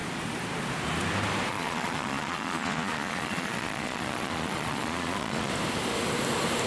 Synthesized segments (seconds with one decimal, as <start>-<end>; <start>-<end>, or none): 1.5-5.5

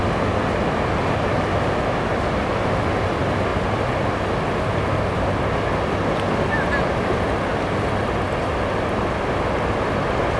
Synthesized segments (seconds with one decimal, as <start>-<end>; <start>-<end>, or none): none

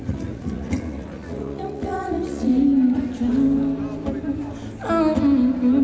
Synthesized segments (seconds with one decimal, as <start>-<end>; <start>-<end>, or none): 0.0-2.5